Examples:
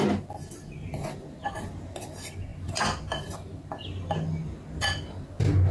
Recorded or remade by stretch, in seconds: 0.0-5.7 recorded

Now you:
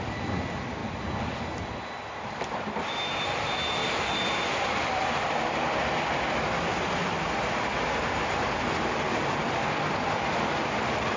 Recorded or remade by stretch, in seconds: 0.0-3.8 remade; 3.8-4.4 recorded; 4.4-9.4 remade; 9.4-9.9 recorded; 9.9-11.2 remade

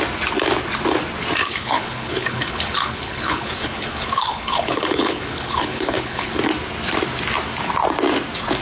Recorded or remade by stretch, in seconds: 0.0-1.4 recorded; 1.4-6.4 remade; 6.4-8.6 recorded

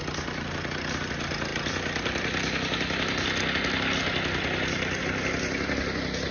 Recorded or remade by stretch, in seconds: 0.0-6.3 recorded